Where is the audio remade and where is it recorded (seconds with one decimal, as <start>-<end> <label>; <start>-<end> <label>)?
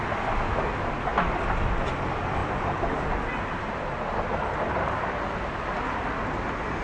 0.0-6.8 recorded